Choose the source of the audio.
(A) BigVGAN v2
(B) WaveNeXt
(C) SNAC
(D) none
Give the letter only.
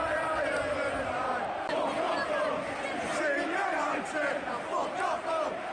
D